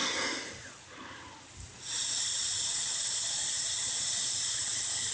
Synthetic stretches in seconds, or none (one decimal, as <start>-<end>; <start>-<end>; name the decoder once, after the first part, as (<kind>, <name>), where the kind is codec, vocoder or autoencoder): none